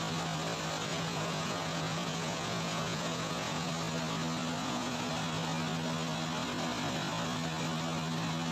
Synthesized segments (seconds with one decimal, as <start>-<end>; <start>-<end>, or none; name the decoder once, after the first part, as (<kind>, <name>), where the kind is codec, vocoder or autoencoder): 0.9-3.7 (vocoder, Vocos); 4.6-5.1